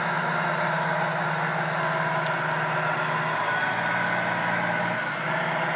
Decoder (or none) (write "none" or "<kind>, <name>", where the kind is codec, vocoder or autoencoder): none